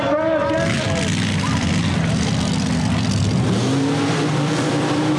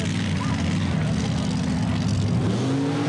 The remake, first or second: first